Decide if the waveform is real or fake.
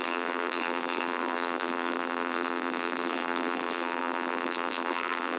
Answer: fake